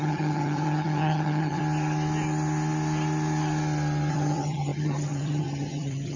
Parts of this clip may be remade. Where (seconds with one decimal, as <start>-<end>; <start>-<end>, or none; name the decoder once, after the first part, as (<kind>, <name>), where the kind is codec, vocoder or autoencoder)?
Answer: 0.0-1.6 (vocoder, HiFi-GAN); 4.1-6.2